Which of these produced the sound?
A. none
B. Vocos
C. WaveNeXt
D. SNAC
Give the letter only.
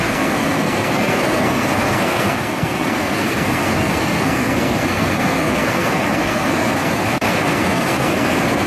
D